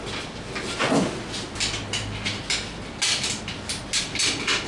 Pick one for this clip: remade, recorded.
recorded